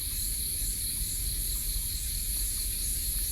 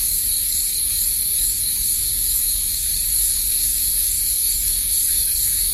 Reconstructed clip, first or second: second